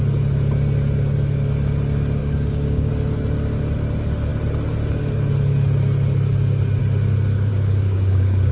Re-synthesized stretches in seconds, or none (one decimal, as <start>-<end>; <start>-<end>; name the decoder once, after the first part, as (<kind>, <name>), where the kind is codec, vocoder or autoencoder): 2.2-2.9 (codec, DAC); 7.5-8.5